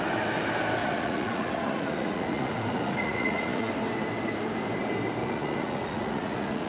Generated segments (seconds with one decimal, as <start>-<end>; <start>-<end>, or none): 0.8-3.7; 5.2-6.7